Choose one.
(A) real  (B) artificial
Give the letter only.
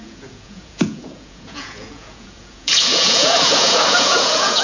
B